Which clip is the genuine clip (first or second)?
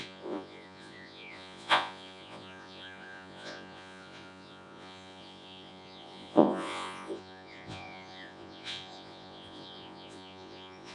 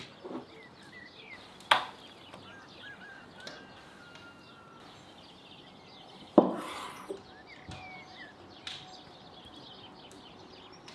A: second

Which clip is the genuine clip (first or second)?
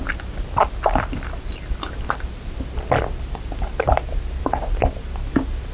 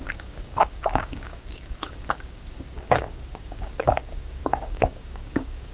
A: first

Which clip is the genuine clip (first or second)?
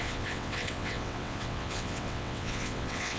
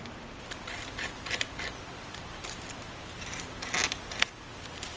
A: second